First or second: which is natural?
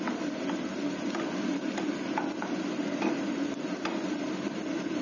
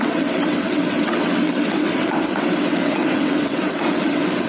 first